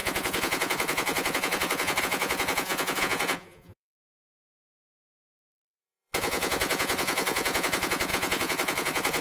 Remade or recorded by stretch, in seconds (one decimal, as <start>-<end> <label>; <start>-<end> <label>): 0.0-9.2 remade